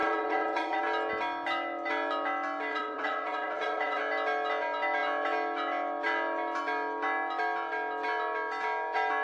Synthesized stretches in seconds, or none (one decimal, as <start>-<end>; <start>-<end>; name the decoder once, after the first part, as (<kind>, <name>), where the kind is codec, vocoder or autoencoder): 0.0-0.8 (vocoder, WaveNeXt); 2.7-4.0